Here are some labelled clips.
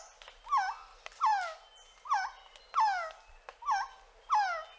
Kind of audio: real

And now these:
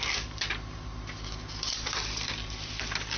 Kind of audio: real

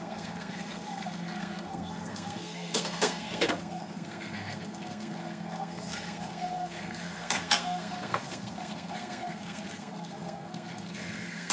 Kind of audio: fake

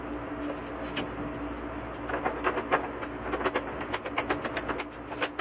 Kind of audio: real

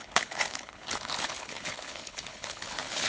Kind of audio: fake